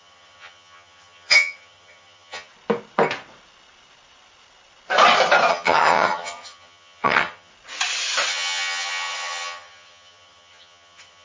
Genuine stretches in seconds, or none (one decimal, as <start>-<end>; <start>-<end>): 2.5-5.5; 7.5-8.3